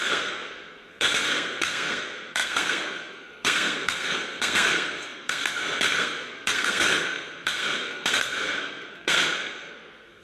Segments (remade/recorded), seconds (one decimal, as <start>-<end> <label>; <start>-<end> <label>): 0.0-10.2 remade